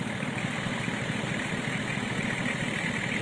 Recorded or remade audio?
remade